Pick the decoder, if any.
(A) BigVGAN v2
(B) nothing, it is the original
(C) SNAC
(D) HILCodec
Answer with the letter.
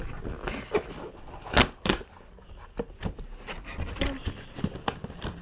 B